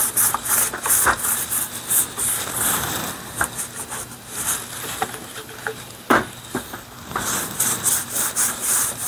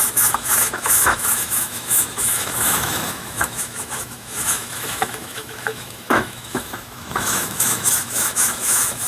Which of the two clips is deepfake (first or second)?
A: second